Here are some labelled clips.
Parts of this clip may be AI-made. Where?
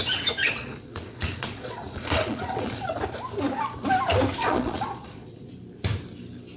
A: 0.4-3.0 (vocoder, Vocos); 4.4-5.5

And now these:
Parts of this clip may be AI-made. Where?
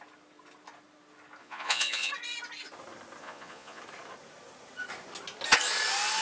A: 1.4-2.1 (vocoder, Vocos); 3.2-3.8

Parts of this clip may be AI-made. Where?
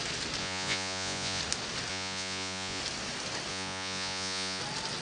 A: 0.4-1.4 (vocoder, Vocos); 1.9-2.8; 3.5-4.6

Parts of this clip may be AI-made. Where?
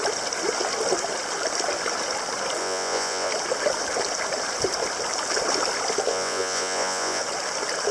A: 2.6-3.3 (vocoder, Vocos); 6.1-7.2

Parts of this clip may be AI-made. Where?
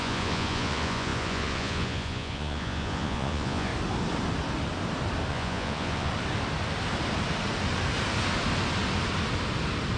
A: 0.0-3.7 (vocoder, Vocos); 5.3-6.1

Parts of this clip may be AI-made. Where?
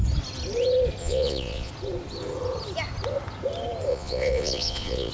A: 1.0-1.7 (vocoder, Vocos); 3.9-5.1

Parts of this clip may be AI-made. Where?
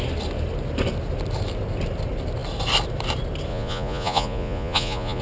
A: 3.5-5.2 (vocoder, Vocos)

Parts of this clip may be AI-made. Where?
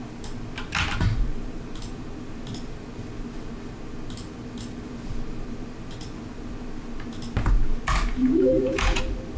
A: 8.2-9.0 (vocoder, Vocos)